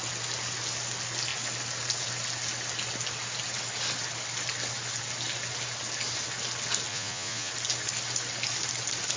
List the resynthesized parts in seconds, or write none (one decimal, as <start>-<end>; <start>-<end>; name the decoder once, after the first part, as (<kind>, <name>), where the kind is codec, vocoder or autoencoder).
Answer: 6.9-7.5 (vocoder, Vocos)